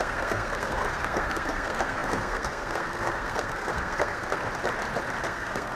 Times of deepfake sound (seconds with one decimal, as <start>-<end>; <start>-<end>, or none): 0.0-4.4; 5.2-5.8